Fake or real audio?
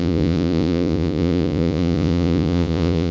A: fake